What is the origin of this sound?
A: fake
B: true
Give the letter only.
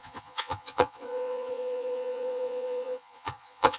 A